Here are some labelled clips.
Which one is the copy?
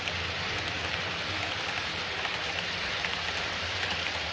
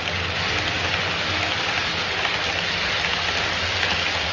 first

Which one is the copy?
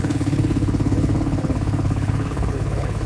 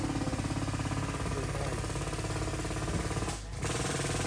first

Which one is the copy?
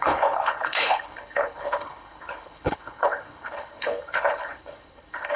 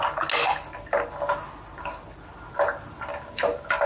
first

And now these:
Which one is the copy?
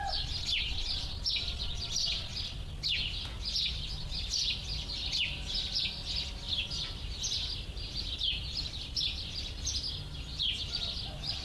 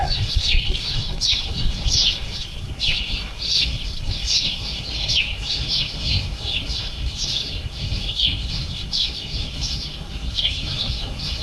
second